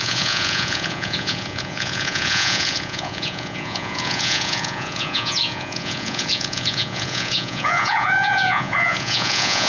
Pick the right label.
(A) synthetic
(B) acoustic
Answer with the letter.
A